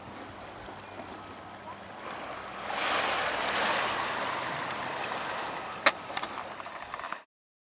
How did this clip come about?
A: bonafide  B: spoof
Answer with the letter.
A